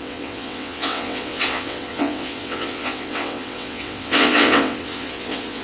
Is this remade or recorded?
remade